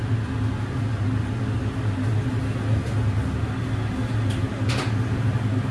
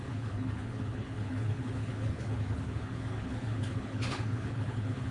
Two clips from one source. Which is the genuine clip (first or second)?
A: first